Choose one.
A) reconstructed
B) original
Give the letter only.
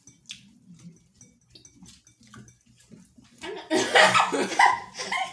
B